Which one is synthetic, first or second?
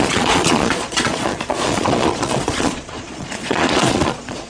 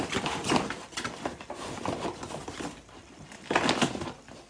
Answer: first